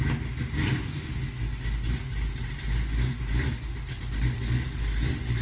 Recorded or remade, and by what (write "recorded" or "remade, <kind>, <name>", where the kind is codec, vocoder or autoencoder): recorded